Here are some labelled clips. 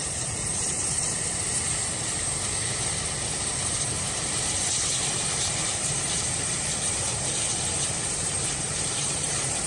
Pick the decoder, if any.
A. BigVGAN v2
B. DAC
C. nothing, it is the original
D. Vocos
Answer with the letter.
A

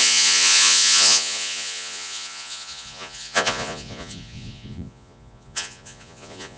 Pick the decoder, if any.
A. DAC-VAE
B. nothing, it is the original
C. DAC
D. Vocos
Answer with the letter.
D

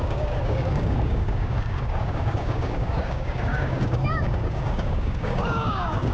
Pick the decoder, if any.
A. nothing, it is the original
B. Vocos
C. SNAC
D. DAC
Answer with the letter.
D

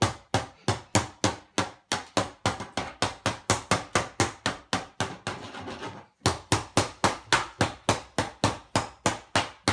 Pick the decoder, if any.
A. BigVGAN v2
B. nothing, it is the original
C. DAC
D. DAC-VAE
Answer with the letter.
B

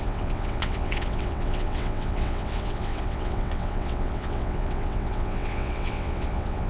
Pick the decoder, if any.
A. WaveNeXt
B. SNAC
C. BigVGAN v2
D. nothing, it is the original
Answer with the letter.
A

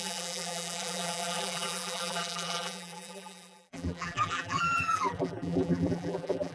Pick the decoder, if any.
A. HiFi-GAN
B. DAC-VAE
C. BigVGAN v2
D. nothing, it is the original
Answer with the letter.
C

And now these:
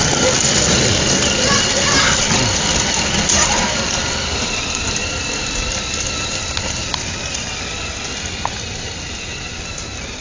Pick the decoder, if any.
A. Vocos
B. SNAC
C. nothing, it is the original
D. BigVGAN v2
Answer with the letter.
C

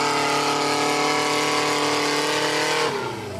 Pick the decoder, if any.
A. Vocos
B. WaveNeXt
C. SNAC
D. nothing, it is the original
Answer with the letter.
D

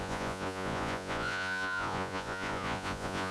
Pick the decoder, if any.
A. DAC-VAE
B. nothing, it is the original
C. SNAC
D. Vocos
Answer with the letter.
D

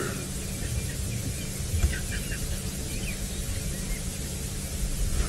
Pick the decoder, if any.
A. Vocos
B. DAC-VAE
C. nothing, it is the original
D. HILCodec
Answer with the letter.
C